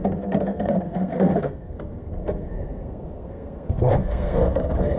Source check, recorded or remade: remade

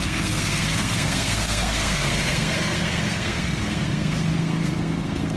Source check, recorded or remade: remade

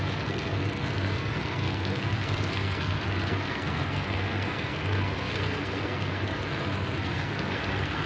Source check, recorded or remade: remade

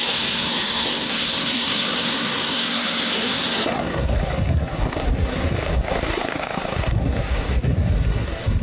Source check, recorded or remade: remade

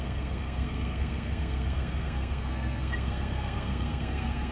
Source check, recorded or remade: remade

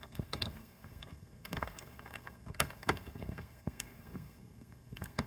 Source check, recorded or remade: remade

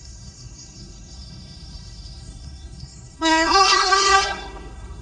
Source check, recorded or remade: remade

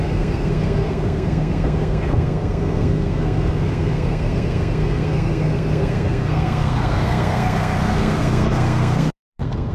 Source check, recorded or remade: remade